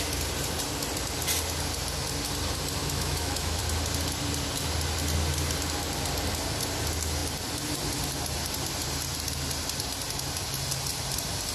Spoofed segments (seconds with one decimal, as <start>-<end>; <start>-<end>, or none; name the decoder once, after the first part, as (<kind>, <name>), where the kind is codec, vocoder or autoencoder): 2.8-3.6 (autoencoder, DAC-VAE)